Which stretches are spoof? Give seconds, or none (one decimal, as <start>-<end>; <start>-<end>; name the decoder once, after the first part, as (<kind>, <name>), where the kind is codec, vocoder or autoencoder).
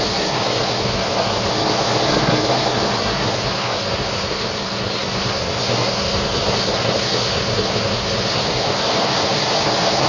0.0-10.1 (codec, SNAC)